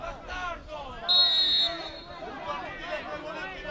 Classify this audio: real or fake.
real